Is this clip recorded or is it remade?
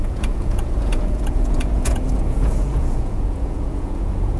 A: remade